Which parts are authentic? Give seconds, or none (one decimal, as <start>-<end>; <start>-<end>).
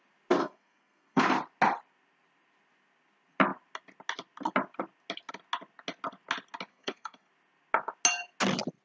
0.0-0.4; 1.2-6.7; 7.3-8.8